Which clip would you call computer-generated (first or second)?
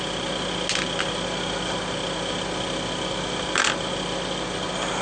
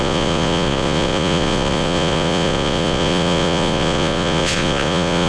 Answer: second